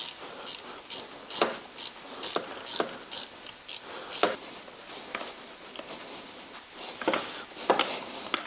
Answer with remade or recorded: recorded